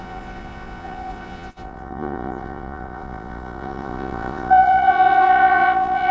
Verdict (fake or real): fake